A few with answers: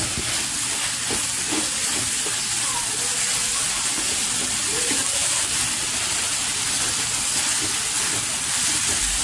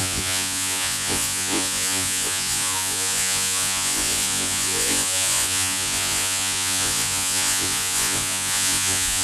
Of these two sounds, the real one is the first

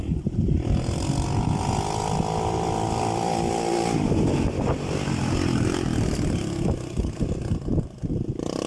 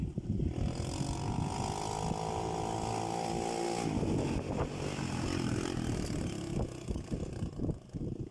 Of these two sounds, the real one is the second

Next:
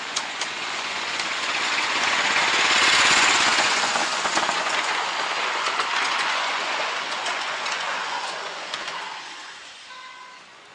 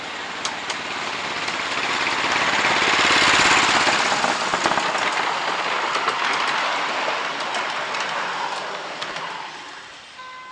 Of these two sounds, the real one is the second